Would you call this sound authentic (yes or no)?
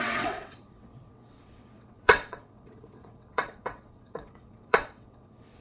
no